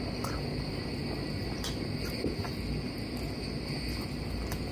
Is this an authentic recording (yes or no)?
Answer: yes